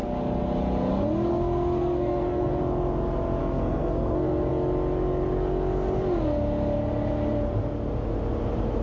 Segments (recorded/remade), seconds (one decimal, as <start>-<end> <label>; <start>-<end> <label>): 0.0-1.3 recorded; 1.3-2.6 remade; 2.6-3.4 recorded; 3.4-4.5 remade; 4.5-8.8 recorded